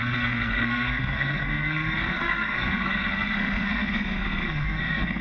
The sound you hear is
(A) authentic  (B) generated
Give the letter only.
B